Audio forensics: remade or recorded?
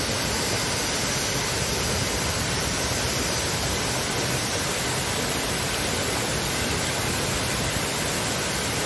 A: recorded